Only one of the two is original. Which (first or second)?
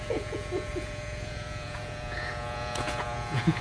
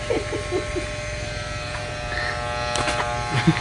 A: second